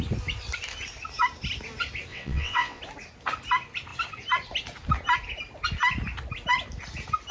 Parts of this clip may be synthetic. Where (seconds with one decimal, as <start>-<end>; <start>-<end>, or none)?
2.1-2.8

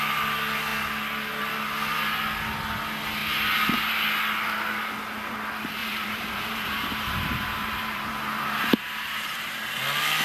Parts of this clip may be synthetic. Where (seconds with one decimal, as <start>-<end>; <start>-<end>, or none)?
5.8-9.6

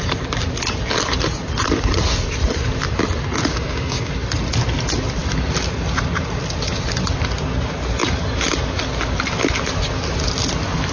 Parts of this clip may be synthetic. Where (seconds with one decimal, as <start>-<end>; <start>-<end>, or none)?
3.5-4.1

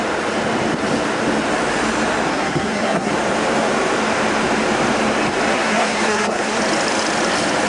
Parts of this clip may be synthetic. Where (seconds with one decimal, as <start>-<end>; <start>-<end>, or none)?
2.3-3.1; 5.5-6.6